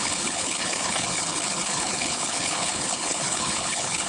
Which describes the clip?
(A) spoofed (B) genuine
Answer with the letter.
A